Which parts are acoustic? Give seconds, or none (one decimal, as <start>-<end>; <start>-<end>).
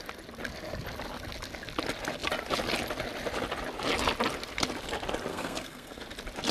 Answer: 0.0-5.3; 6.0-6.5